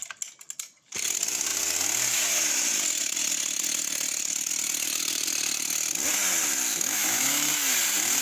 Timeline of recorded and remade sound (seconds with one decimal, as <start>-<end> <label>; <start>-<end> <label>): 0.0-6.7 recorded; 6.7-7.5 remade; 7.5-8.2 recorded